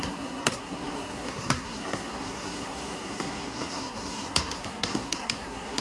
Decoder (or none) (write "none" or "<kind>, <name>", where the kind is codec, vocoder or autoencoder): codec, SNAC